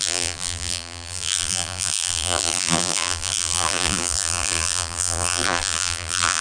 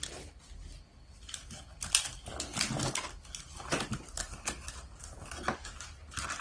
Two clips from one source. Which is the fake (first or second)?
first